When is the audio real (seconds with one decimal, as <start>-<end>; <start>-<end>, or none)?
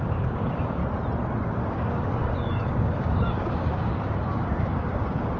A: 0.8-1.5